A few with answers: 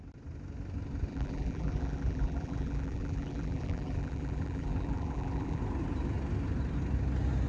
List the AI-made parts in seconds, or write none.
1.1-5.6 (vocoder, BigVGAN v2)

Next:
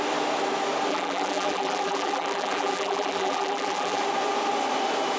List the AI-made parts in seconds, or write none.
0.9-4.0 (vocoder, BigVGAN v2)

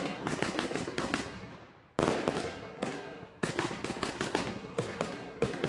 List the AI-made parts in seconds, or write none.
0.0-1.5 (codec, SNAC); 2.3-5.7

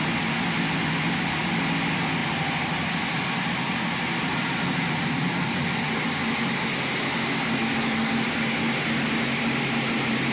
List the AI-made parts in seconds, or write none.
none

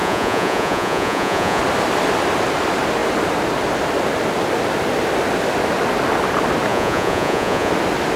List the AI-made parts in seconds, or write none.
0.0-1.6 (vocoder, Vocos); 6.7-7.7

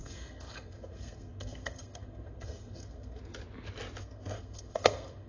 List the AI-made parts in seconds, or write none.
0.0-3.2 (codec, SNAC); 4.0-5.3

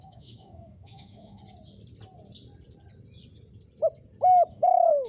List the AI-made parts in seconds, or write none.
0.0-1.4 (autoencoder, DAC-VAE); 4.5-5.1